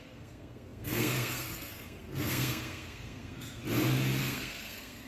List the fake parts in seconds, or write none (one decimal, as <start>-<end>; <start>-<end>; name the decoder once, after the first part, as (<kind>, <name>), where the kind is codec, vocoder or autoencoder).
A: 0.0-3.6 (codec, SNAC); 4.2-5.1